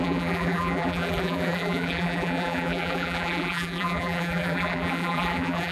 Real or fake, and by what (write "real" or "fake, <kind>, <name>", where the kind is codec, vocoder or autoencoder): fake, vocoder, BigVGAN v2